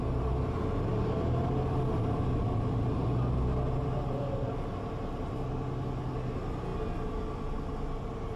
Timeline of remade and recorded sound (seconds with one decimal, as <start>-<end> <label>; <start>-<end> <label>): 0.0-8.4 recorded